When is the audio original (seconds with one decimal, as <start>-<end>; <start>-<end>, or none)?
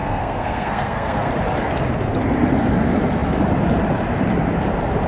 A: 1.3-5.1